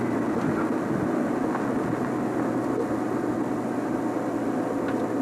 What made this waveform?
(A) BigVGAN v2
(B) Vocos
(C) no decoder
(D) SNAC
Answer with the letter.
C